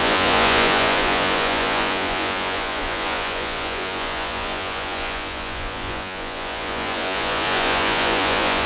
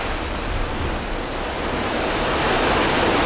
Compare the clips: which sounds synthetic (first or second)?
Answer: first